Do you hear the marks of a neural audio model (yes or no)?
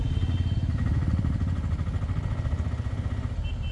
no